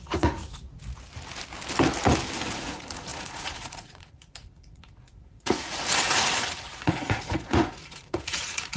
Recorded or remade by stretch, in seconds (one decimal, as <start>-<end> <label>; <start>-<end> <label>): 0.0-0.4 remade; 0.4-2.4 recorded; 2.4-8.8 remade